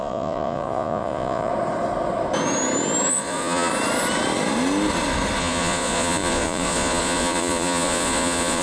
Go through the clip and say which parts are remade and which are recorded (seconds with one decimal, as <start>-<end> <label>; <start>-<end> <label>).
0.0-1.5 remade; 1.5-3.1 recorded; 3.1-3.7 remade; 3.7-5.4 recorded; 5.4-8.6 remade